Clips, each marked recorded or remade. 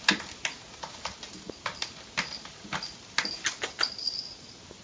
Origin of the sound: recorded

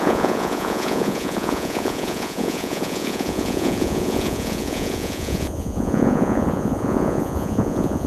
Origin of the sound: remade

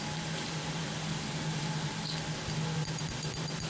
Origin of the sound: remade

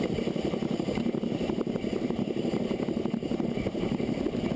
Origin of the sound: recorded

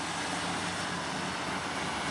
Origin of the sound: recorded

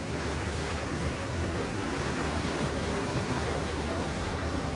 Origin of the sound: remade